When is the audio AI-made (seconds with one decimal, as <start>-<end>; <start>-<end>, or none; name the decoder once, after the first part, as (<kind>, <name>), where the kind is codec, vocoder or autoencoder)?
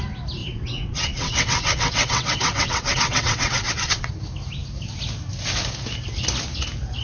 0.4-4.1 (vocoder, WaveNeXt)